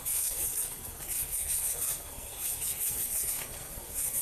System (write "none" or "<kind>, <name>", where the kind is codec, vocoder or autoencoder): codec, SNAC